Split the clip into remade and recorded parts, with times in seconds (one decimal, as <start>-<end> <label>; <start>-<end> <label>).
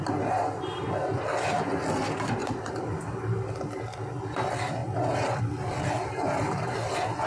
0.0-2.4 recorded; 2.4-3.5 remade; 3.5-4.8 recorded; 4.8-5.4 remade; 5.4-7.3 recorded